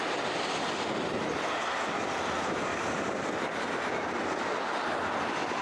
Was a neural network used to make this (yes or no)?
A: no